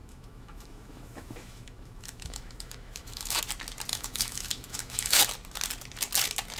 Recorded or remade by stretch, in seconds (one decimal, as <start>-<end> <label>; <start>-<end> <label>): 0.0-3.4 remade; 3.4-3.9 recorded; 3.9-5.2 remade; 5.2-6.6 recorded